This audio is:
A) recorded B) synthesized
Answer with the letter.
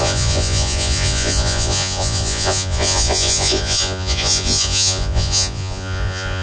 B